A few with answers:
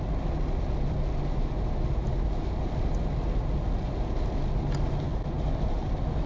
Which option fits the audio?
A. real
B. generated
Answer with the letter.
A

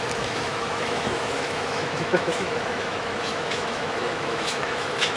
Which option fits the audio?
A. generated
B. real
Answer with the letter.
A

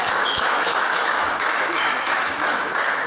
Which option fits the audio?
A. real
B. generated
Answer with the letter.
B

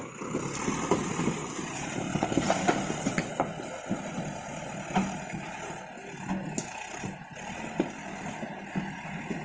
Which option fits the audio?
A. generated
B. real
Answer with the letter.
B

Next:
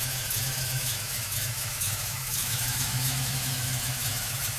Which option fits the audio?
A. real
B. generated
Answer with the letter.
B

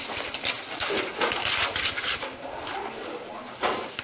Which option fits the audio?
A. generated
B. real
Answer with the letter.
B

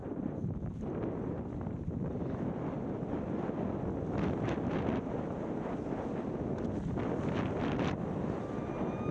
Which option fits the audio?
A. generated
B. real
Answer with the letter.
B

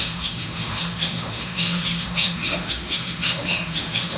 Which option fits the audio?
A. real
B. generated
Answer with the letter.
B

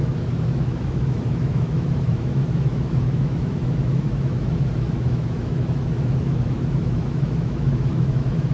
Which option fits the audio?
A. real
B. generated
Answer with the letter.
B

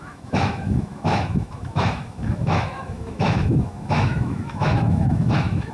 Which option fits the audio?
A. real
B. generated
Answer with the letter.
B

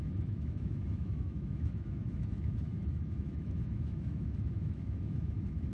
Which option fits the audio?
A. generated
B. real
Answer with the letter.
A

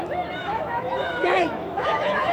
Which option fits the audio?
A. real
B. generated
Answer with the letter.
B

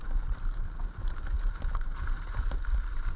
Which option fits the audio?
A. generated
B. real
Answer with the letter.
B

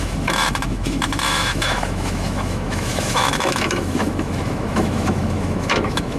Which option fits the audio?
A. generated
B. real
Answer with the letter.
A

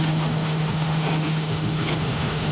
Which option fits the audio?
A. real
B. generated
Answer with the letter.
B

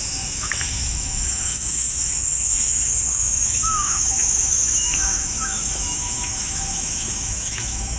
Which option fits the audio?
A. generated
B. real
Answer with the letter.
A